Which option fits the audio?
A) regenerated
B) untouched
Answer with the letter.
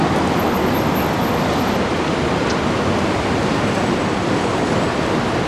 B